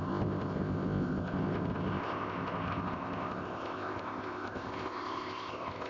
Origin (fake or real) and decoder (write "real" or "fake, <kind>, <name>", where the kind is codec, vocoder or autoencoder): fake, codec, ZipCodec